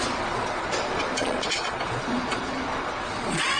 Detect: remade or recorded remade